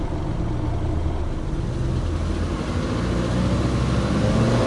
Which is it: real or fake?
real